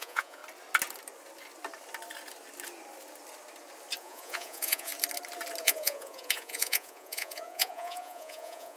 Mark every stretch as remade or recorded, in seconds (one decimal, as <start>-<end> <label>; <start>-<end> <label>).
0.0-0.4 remade; 0.4-4.0 recorded; 4.0-4.9 remade; 4.9-5.6 recorded; 5.6-8.8 remade